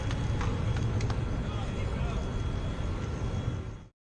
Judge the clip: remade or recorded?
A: recorded